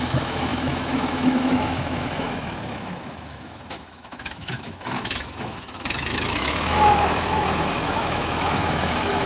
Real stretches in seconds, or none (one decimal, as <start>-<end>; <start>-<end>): none